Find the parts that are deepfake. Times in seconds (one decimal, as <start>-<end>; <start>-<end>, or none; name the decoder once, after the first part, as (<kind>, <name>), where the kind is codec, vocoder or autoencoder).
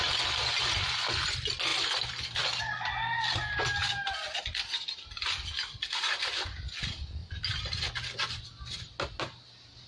none